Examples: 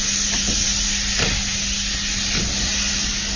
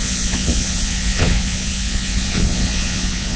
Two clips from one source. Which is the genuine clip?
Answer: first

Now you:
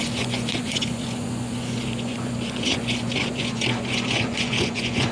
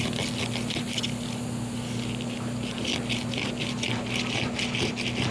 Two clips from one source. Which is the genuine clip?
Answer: second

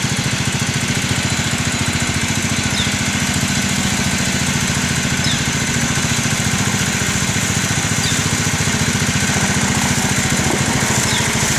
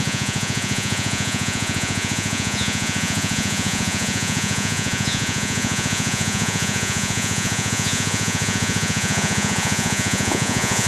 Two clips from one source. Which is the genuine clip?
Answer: first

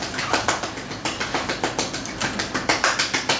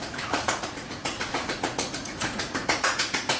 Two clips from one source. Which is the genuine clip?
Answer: first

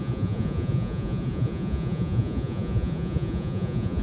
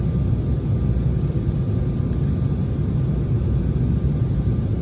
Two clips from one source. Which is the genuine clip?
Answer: second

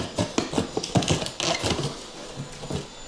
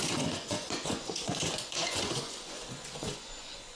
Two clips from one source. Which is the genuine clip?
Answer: first